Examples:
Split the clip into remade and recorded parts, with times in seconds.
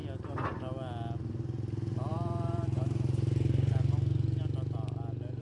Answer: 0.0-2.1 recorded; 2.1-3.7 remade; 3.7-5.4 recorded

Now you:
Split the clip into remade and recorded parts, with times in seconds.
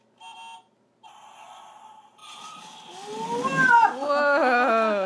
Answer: 0.0-5.1 recorded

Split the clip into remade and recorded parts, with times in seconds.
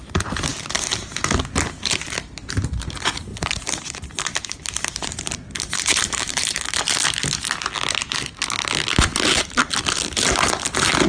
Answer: 0.0-3.3 recorded; 3.3-6.7 remade; 6.7-11.1 recorded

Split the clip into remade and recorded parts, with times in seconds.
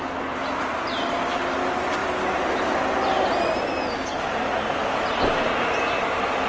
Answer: 0.0-6.5 recorded